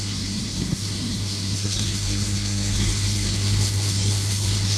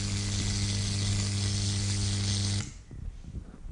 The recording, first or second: second